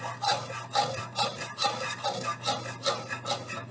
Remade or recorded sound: recorded